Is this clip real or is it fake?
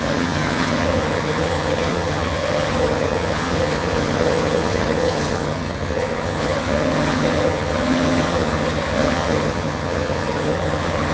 fake